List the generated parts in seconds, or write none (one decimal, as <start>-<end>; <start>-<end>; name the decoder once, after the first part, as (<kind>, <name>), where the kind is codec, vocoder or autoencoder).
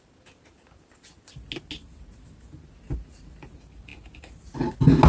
none